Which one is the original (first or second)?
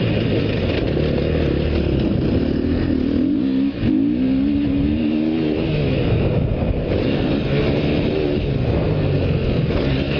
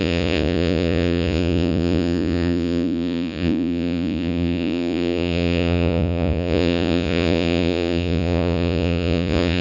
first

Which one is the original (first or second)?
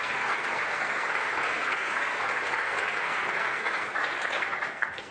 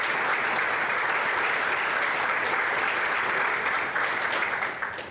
second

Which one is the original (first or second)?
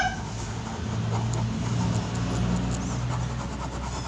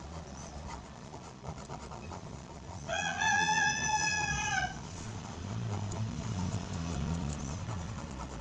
first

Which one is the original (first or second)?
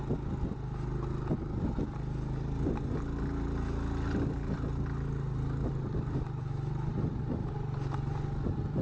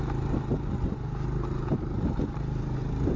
first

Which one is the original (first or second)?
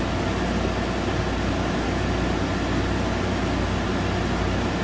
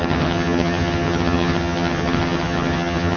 first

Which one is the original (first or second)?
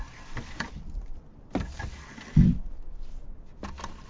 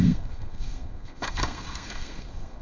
first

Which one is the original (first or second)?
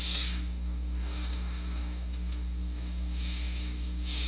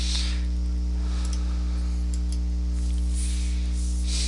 second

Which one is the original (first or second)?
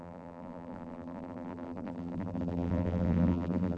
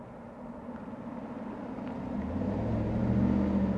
second